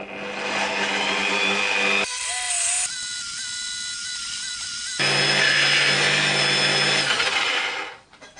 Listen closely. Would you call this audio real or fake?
real